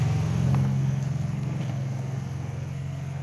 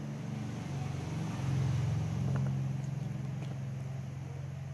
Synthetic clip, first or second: first